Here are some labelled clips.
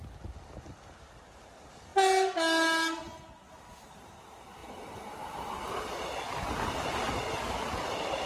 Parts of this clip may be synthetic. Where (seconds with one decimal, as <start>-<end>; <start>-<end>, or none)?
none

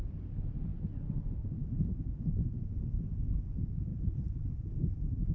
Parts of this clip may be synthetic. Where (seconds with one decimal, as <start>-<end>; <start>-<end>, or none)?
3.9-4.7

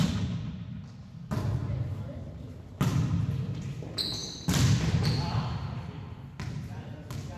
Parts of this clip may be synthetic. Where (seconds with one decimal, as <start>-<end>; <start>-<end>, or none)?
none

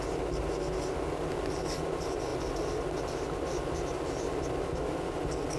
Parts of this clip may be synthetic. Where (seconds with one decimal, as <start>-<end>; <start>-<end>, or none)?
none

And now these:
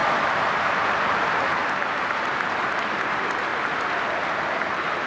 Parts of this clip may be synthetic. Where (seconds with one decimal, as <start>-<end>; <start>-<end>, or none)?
0.0-3.5; 4.1-5.1

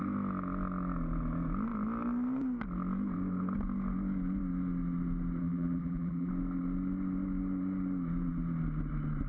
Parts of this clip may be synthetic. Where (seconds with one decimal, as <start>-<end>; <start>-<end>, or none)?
5.4-6.3